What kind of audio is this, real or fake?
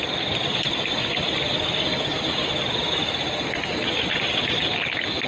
real